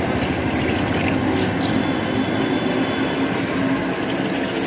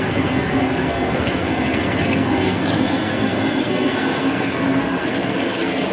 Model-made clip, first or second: second